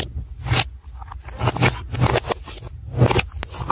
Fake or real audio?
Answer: real